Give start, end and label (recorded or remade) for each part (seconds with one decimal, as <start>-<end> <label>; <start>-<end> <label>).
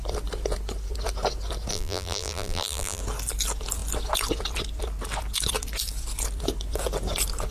0.0-1.7 recorded; 1.7-3.0 remade; 3.0-7.5 recorded